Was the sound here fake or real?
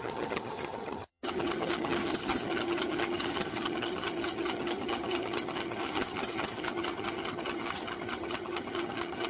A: fake